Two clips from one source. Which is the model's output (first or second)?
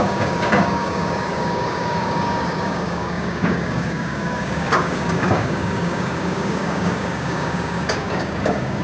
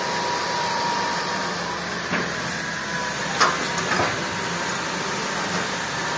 first